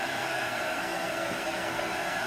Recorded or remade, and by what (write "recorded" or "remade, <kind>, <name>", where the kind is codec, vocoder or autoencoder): remade, codec, SNAC